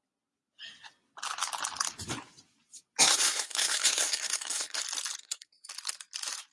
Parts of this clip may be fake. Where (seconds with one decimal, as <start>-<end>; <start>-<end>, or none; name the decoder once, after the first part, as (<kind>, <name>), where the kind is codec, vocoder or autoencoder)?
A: 3.1-4.8 (codec, SNAC); 5.2-5.7